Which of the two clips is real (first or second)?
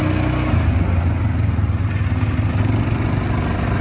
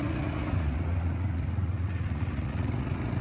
first